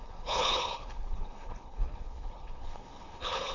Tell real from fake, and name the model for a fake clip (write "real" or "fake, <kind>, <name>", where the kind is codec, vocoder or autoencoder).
fake, codec, HILCodec